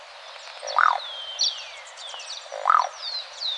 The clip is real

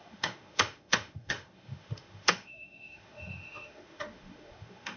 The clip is fake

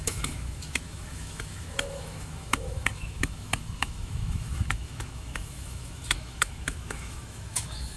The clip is fake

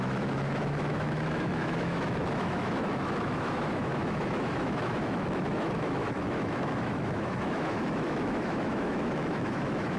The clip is fake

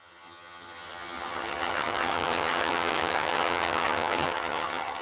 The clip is fake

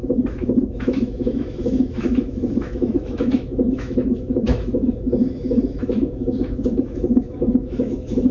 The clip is fake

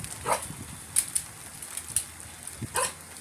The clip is real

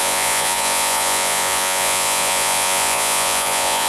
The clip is fake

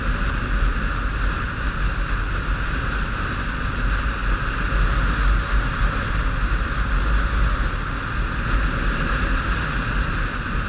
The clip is real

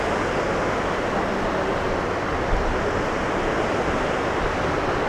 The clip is real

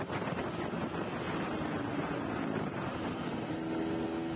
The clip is real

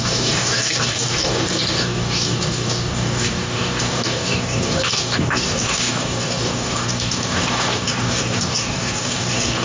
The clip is fake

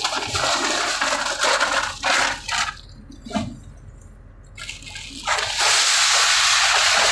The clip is real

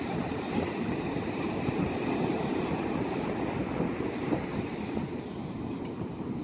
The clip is real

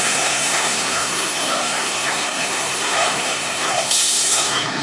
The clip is fake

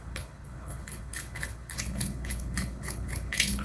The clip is fake